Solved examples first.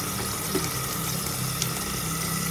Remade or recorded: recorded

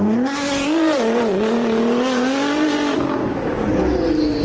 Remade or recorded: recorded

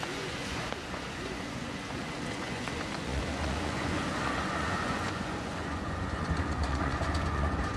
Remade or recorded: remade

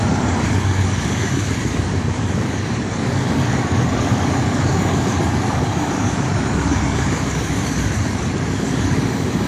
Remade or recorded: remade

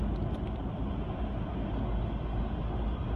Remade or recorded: recorded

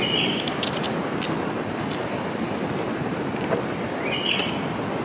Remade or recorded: recorded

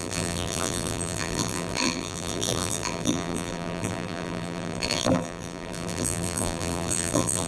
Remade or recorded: remade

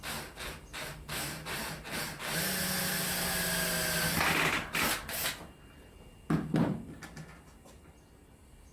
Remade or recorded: recorded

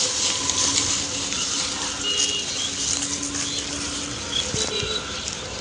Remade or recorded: recorded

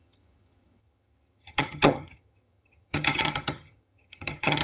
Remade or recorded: remade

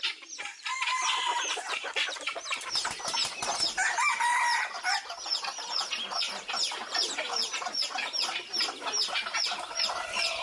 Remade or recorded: recorded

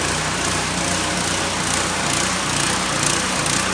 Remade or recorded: recorded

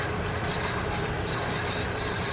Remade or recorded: recorded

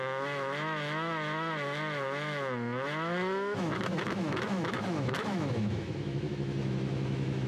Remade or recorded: remade